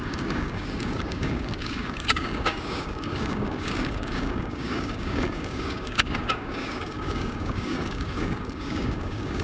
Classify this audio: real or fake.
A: fake